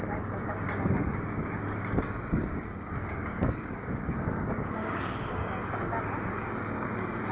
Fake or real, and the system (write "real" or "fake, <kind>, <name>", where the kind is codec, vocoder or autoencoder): fake, codec, DAC